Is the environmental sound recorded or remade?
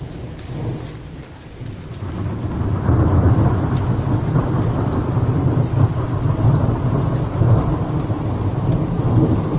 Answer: recorded